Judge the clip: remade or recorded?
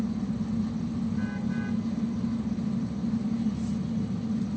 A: recorded